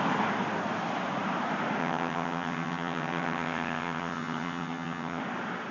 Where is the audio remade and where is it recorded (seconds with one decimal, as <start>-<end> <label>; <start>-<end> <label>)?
0.0-1.8 recorded; 1.8-5.2 remade; 5.2-5.7 recorded